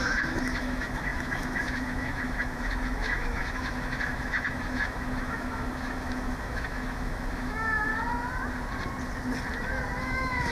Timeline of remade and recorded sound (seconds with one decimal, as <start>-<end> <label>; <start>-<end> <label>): 0.0-7.9 remade; 7.9-10.0 recorded; 10.0-10.5 remade

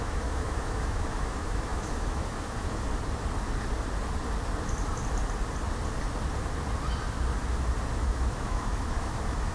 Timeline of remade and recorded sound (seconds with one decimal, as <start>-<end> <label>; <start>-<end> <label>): 0.0-2.9 remade; 2.9-8.0 recorded; 8.0-9.5 remade

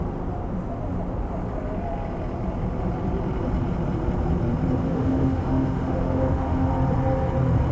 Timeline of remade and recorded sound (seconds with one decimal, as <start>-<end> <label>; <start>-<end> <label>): 0.0-4.8 recorded; 4.8-6.7 remade; 6.7-7.7 recorded

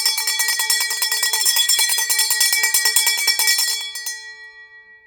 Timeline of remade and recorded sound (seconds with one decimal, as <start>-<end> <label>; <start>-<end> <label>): 0.0-1.4 recorded; 1.4-2.1 remade; 2.1-5.1 recorded